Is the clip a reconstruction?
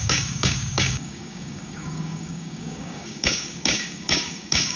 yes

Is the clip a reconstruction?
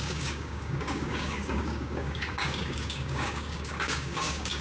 yes